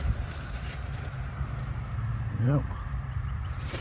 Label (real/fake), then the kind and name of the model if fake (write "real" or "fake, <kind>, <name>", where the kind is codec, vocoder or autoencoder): fake, vocoder, BigVGAN v2